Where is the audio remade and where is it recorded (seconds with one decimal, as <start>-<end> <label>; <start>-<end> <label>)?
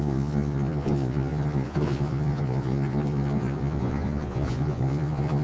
0.0-5.4 remade